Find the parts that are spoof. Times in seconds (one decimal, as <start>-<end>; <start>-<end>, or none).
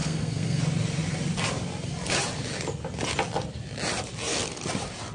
0.0-0.6